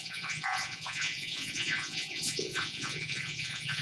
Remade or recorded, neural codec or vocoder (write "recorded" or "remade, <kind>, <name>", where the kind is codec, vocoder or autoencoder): remade, vocoder, Vocos